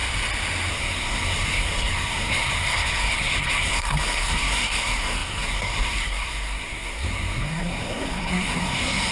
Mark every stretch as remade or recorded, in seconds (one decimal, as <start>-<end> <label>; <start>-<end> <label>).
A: 0.0-0.7 recorded; 0.7-9.1 remade